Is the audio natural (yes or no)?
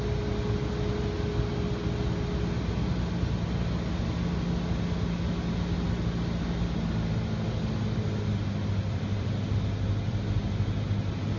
yes